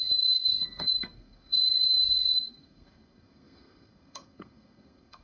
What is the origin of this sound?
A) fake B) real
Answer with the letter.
A